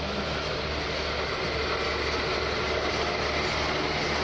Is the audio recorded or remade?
recorded